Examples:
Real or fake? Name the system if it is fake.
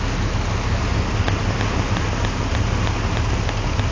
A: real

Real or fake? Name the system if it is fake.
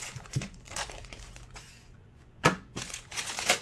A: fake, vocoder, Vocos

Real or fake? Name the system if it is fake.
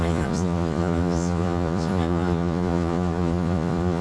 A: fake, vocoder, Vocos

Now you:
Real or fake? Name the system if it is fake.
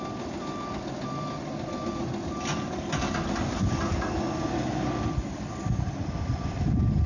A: real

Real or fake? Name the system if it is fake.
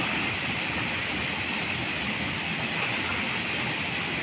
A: real